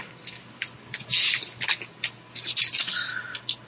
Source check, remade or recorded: recorded